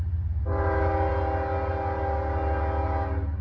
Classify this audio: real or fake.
real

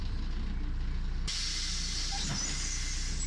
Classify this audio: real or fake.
real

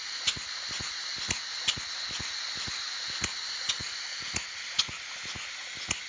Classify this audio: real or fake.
real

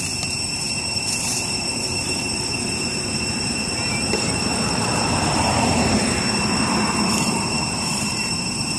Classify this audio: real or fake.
fake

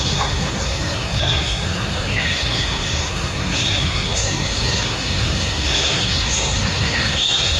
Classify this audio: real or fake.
fake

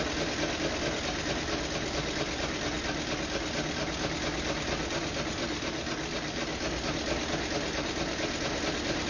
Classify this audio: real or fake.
real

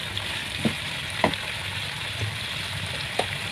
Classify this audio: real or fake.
real